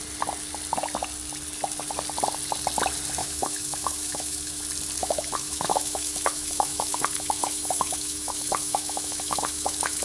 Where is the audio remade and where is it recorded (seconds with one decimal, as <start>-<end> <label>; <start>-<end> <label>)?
0.0-3.2 recorded; 3.2-4.6 remade; 4.6-5.0 recorded; 5.0-10.0 remade